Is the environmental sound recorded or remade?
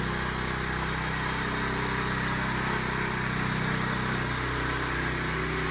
recorded